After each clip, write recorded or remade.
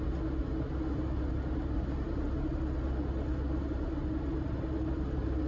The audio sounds recorded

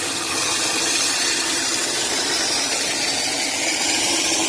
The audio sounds recorded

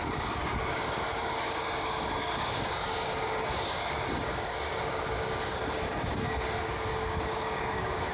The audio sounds remade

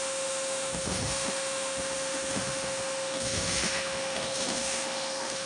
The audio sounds remade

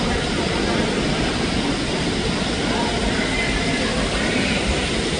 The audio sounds recorded